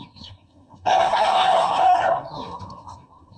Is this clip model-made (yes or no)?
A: yes